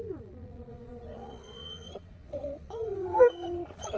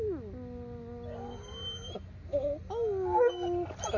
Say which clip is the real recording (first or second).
second